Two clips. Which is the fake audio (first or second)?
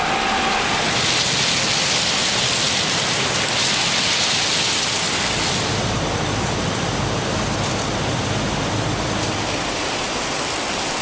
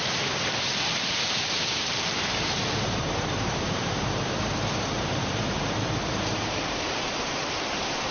second